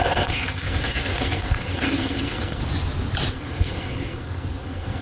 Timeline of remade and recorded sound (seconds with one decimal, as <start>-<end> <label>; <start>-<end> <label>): 0.0-2.6 remade; 2.6-3.3 recorded; 3.3-5.0 remade